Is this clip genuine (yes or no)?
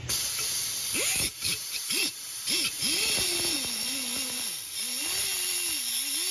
yes